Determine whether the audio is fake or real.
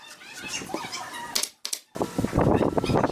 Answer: real